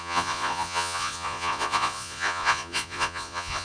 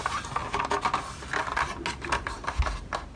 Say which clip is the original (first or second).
second